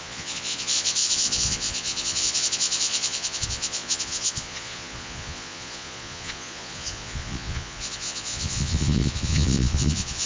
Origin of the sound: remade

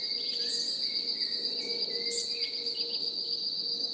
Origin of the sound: recorded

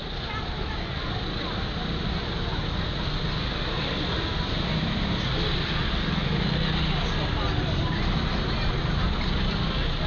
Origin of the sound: recorded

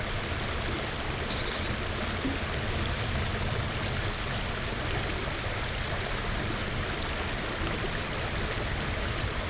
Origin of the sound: recorded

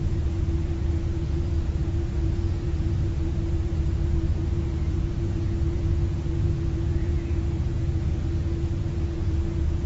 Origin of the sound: remade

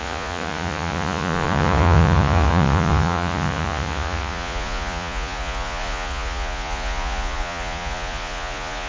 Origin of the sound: remade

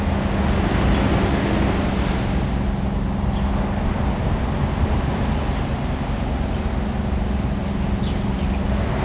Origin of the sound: recorded